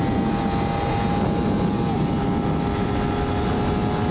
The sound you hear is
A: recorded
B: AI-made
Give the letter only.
A